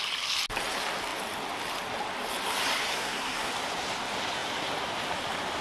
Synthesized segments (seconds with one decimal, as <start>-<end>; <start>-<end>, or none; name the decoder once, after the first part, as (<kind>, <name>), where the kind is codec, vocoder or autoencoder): 2.9-3.5 (codec, SNAC)